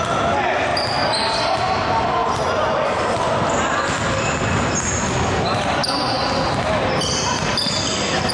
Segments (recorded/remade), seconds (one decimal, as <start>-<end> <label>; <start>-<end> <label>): 0.0-8.3 recorded